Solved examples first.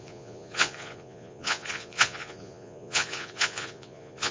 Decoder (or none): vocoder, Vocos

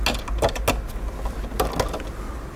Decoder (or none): none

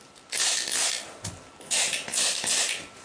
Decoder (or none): none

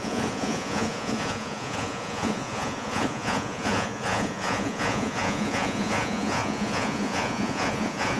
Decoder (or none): vocoder, Vocos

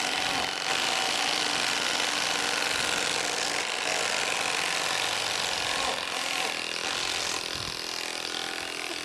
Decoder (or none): none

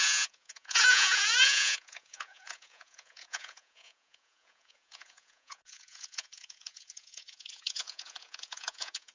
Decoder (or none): vocoder, Vocos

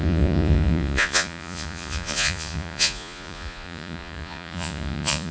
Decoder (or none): vocoder, Vocos